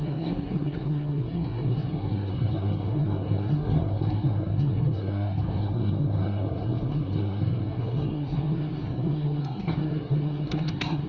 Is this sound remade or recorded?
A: remade